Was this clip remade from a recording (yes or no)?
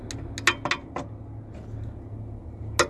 no